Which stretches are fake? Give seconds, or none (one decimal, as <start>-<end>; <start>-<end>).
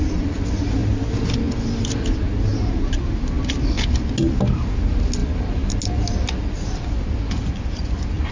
none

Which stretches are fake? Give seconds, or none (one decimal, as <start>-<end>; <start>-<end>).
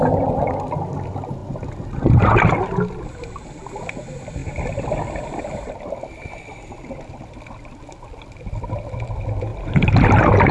none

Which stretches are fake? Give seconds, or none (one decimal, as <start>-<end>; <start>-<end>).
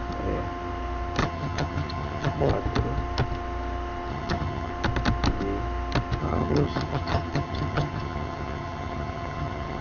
1.2-2.5; 4.1-4.7; 6.2-9.8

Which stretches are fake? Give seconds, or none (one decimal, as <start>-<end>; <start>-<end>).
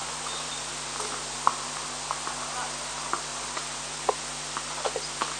0.0-0.5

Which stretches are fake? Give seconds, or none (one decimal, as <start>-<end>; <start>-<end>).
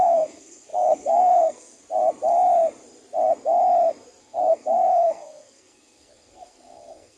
0.0-1.8; 4.2-7.2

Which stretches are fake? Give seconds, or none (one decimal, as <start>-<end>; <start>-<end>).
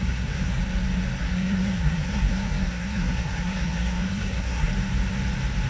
0.0-0.6; 1.2-4.7